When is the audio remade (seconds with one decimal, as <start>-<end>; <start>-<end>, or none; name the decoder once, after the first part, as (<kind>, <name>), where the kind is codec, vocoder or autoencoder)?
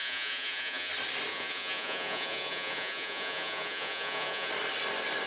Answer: 0.0-0.9 (vocoder, Vocos); 1.3-4.5